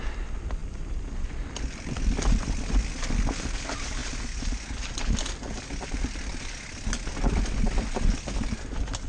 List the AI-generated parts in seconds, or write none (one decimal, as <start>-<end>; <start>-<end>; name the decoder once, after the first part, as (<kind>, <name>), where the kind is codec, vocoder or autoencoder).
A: none